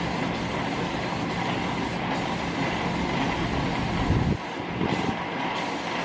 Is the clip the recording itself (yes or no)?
yes